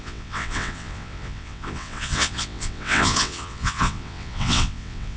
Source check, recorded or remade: remade